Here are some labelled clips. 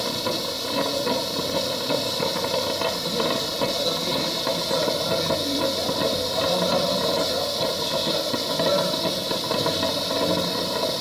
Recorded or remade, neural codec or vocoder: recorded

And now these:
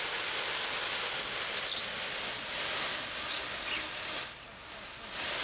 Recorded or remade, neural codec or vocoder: recorded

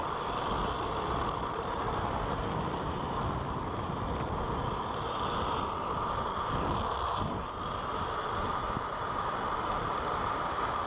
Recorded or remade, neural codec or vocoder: remade, vocoder, BigVGAN v2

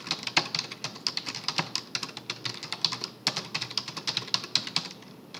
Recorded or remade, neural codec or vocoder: recorded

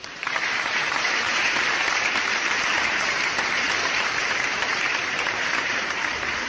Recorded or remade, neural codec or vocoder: remade, vocoder, BigVGAN v2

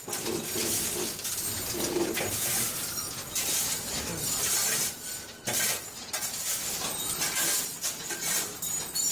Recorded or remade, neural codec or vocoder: recorded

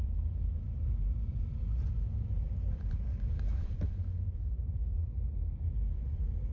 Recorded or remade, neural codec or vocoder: remade, vocoder, BigVGAN v2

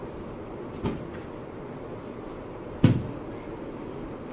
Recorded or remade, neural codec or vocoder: remade, vocoder, BigVGAN v2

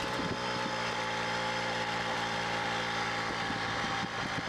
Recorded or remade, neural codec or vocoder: recorded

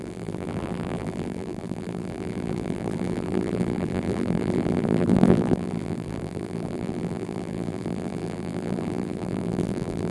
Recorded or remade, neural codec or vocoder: remade, vocoder, BigVGAN v2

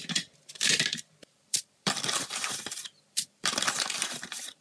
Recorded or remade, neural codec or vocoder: remade, vocoder, BigVGAN v2